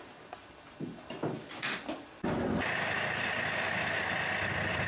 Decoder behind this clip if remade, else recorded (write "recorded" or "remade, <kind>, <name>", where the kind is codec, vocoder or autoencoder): recorded